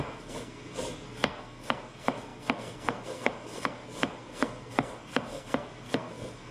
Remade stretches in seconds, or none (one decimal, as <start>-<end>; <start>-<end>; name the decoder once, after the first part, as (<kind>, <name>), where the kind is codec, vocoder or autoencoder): 0.0-6.5 (codec, SNAC)